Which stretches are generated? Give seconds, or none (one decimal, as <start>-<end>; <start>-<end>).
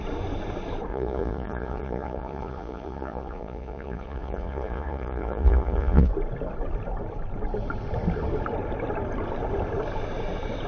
0.9-6.1